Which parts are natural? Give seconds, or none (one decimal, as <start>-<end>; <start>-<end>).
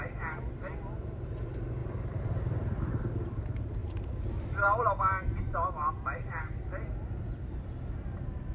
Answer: 0.0-1.8; 2.9-3.8; 6.4-8.5